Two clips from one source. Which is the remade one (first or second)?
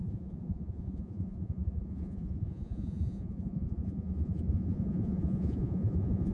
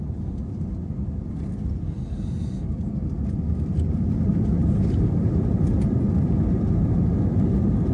first